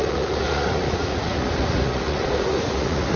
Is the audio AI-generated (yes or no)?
yes